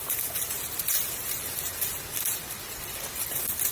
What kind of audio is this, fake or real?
real